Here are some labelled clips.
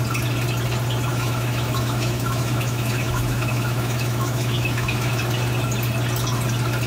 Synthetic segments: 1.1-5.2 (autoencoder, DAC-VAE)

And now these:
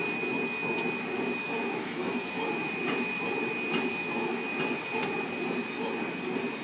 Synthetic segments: 1.4-2.4 (autoencoder, DAC-VAE); 4.0-4.5

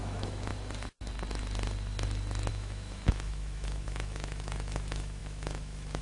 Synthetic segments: 0.0-0.5 (autoencoder, DAC-VAE); 2.5-6.0

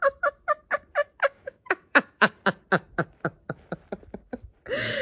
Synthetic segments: 1.0-2.4 (autoencoder, DAC-VAE)

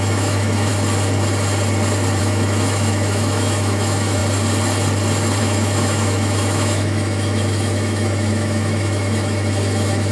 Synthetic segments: 0.0-0.7 (autoencoder, DAC-VAE); 2.2-4.2; 5.4-10.1

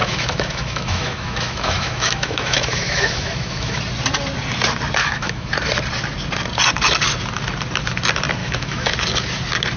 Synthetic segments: 0.0-3.8 (autoencoder, DAC-VAE); 5.0-5.5; 8.4-8.9

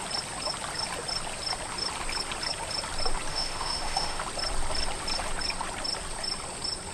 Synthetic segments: 3.3-4.2 (autoencoder, DAC-VAE)

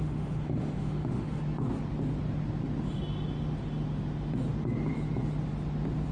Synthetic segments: 0.0-1.4 (autoencoder, DAC-VAE)